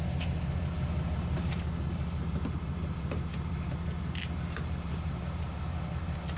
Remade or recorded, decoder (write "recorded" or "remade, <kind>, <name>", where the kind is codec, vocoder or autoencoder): recorded